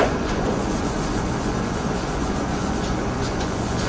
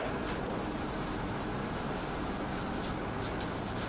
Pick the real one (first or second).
second